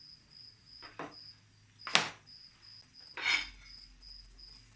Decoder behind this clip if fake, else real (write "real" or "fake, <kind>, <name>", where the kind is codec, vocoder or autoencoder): real